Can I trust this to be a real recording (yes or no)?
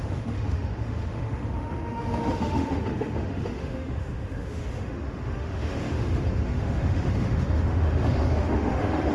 no